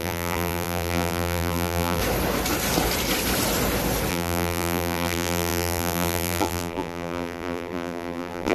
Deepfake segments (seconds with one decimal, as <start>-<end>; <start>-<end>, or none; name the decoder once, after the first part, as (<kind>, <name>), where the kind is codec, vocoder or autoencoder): 0.0-2.0 (vocoder, BigVGAN v2); 4.1-8.5